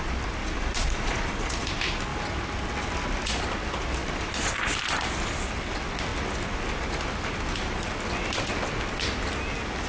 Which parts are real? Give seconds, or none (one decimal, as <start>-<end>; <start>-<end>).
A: 0.0-0.4; 1.5-9.9